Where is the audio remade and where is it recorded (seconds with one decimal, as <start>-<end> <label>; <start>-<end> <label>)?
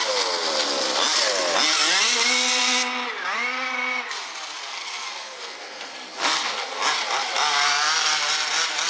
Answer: 0.0-4.7 recorded; 4.7-6.8 remade; 6.8-8.9 recorded